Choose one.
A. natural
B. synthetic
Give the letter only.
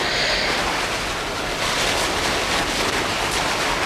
B